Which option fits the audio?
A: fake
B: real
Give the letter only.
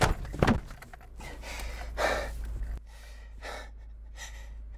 B